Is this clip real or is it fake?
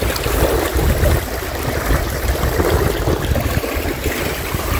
real